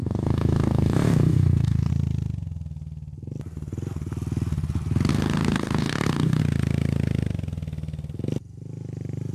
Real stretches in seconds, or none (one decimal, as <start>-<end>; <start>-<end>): 1.9-5.1; 6.4-9.3